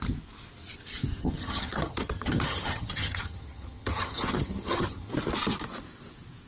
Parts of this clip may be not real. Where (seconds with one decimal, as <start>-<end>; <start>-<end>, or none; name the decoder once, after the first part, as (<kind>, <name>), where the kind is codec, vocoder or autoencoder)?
1.2-5.1 (vocoder, HiFi-GAN)